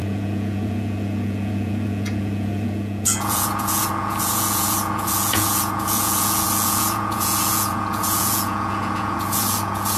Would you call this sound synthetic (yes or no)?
yes